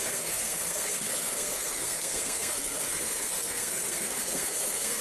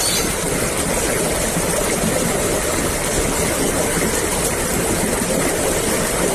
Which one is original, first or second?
second